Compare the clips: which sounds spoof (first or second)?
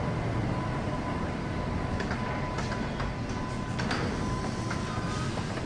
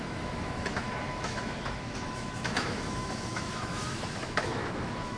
second